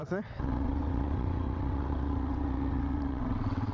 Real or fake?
fake